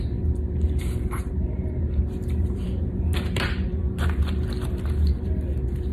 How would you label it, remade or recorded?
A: remade